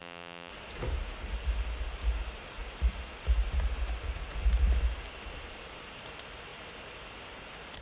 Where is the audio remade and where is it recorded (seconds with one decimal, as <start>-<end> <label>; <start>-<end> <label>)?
0.0-0.5 remade; 0.5-7.8 recorded